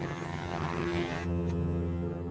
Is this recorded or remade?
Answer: remade